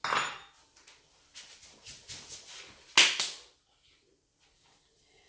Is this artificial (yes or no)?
no